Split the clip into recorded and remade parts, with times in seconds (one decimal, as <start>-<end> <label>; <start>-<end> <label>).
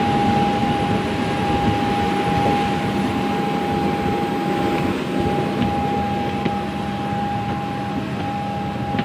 0.0-0.6 recorded; 0.6-1.5 remade; 1.5-9.0 recorded